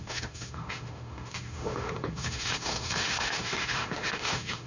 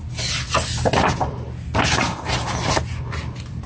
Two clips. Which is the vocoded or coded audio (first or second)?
first